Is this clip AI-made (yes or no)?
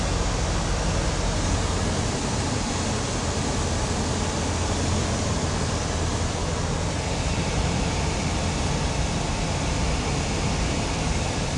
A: no